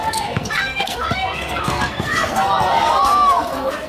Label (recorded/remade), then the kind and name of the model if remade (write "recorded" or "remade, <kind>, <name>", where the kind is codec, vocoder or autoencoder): remade, codec, SNAC